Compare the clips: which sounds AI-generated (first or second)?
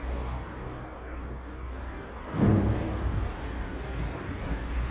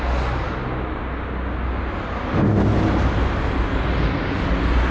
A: first